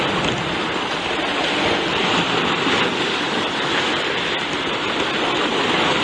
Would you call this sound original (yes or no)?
no